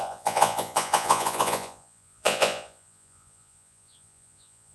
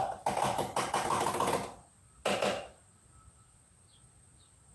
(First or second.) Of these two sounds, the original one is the second